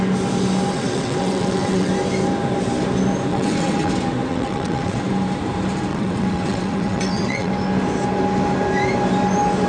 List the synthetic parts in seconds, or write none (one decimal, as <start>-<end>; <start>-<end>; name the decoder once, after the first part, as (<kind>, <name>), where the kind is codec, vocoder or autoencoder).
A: 0.7-1.9 (vocoder, WaveNeXt); 3.3-3.9; 4.3-5.0; 5.9-7.5